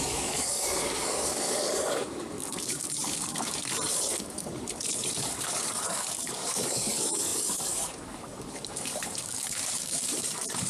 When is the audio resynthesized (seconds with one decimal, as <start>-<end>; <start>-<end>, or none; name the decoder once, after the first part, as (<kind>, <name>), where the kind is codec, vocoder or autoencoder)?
0.0-10.7 (codec, DAC)